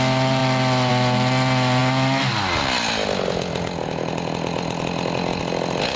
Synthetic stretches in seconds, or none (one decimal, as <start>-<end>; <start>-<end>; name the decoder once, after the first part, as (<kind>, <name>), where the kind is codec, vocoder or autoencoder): none